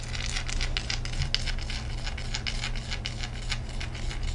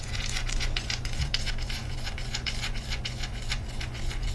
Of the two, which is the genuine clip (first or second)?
first